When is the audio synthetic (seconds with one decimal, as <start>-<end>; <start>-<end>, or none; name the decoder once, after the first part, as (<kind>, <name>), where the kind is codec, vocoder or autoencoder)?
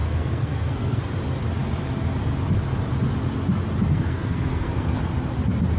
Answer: 0.0-1.0 (codec, SNAC); 3.9-4.9